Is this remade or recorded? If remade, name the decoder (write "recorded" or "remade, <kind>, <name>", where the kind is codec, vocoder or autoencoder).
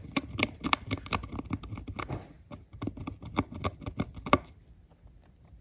recorded